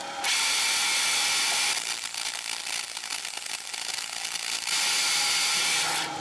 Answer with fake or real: real